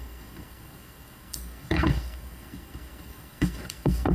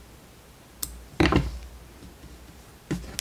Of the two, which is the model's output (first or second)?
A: first